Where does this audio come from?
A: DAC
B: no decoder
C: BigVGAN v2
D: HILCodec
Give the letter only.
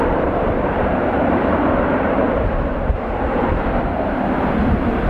C